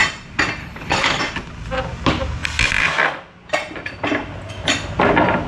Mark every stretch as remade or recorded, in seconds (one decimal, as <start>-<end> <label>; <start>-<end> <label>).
0.0-0.6 recorded; 0.6-1.2 remade; 1.2-5.5 recorded

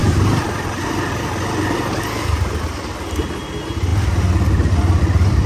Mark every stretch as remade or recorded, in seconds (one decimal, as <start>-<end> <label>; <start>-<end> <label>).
0.0-5.5 recorded